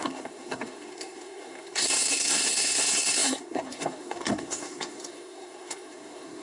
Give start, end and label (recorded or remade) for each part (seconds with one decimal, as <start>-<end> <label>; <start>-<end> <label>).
0.0-6.4 remade